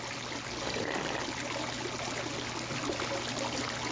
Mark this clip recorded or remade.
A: recorded